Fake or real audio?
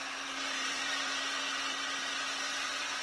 real